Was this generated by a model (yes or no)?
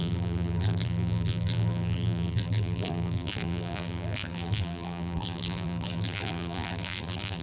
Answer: yes